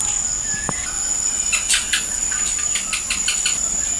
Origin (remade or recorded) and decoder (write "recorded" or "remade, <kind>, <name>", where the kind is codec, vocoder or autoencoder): recorded